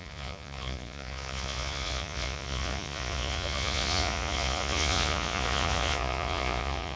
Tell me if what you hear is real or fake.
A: fake